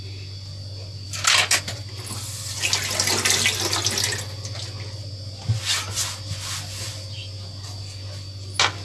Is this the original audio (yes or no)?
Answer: yes